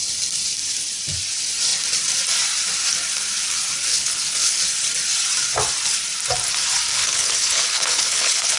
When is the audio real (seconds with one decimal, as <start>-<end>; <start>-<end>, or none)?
0.0-3.9; 4.6-7.0